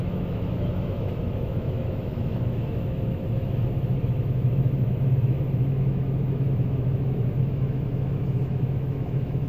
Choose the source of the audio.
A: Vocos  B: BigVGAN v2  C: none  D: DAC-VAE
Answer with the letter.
D